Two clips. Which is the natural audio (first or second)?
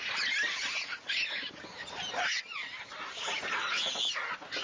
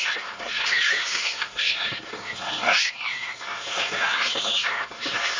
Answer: first